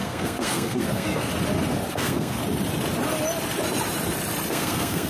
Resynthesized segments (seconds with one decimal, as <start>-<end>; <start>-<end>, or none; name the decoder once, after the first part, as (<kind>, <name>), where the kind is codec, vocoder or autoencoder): 0.0-1.3 (codec, SNAC); 1.9-2.4; 4.5-5.1